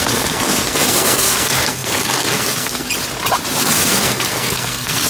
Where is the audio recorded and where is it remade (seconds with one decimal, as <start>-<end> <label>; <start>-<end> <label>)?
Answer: 0.0-2.9 remade; 2.9-3.6 recorded; 3.6-5.1 remade